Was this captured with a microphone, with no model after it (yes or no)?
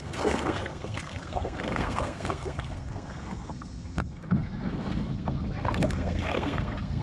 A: no